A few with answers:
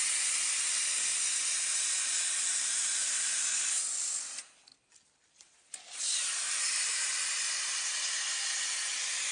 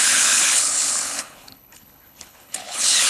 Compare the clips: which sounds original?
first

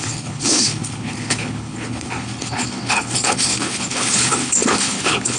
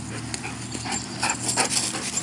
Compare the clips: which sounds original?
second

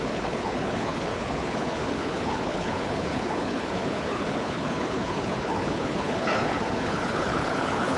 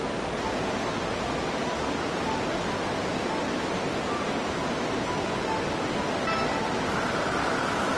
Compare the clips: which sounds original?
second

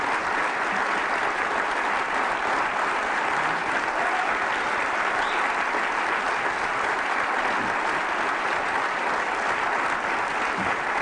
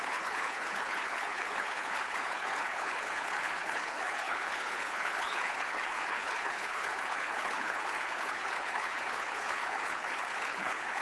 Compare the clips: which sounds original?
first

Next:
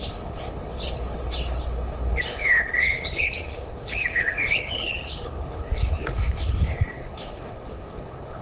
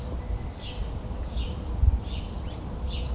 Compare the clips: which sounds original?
second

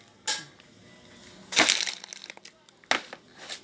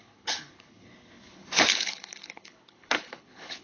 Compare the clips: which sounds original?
first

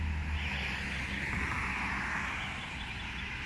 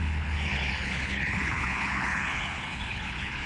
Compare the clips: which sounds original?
first